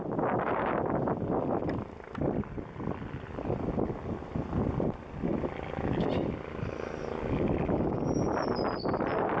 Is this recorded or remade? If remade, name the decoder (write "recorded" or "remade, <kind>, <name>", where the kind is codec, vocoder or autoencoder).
recorded